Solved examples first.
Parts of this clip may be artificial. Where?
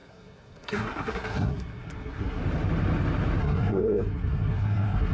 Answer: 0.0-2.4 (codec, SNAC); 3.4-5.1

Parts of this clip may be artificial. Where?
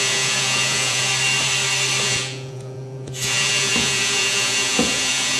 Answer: 0.0-1.1 (vocoder, Vocos); 2.0-5.4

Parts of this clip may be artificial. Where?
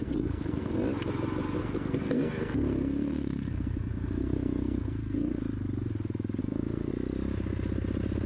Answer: 0.0-0.7 (codec, SNAC); 1.6-5.4; 6.4-6.9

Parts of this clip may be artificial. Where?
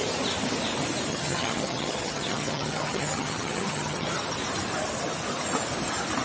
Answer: 1.1-4.1 (vocoder, HiFi-GAN)